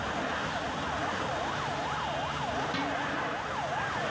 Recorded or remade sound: recorded